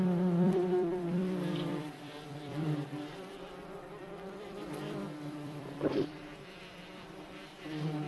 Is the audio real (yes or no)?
no